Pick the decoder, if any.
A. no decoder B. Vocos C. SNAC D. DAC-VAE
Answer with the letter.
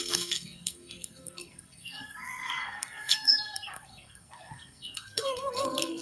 C